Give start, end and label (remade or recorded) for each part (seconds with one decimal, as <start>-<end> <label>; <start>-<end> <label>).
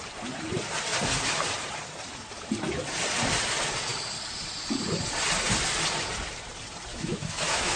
0.0-6.9 recorded; 6.9-7.8 remade